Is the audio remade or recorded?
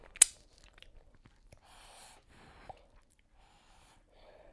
recorded